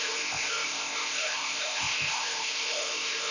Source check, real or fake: fake